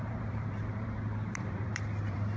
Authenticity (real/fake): fake